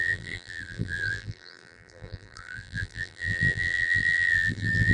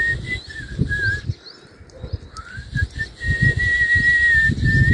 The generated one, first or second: first